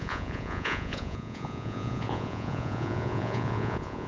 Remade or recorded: remade